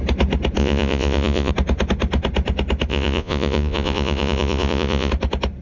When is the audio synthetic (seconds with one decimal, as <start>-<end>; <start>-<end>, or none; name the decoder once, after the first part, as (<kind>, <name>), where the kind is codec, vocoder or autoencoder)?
0.6-1.5 (vocoder, Vocos); 2.9-5.1